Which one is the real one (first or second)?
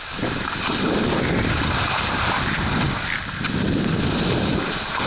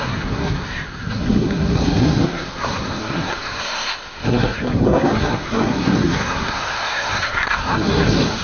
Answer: first